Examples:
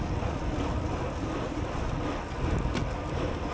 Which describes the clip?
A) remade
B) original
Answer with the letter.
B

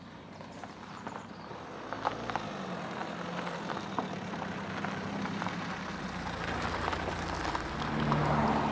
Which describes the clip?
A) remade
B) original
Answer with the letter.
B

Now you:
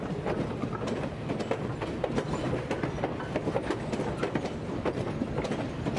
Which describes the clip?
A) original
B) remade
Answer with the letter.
A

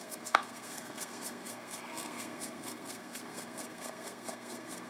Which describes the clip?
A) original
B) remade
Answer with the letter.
B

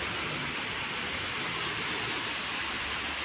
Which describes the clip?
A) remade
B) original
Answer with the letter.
B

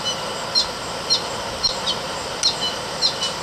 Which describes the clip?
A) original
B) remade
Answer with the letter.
A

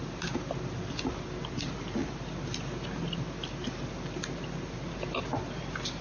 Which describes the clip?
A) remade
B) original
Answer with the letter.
B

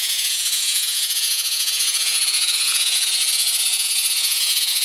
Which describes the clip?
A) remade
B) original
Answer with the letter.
A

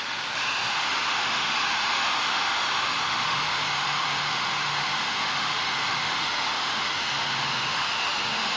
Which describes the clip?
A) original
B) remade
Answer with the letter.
B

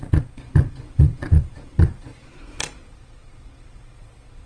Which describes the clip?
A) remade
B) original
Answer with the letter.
A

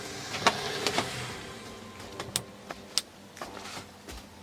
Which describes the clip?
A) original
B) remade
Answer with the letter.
A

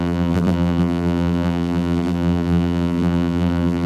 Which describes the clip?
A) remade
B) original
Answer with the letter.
A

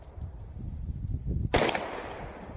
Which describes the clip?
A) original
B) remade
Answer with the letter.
A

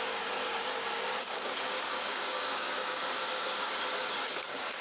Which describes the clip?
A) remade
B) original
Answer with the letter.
A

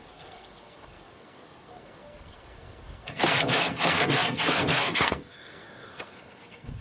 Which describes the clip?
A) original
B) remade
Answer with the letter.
B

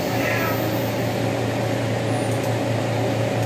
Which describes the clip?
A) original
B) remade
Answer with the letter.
A